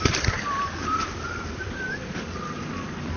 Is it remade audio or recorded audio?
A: recorded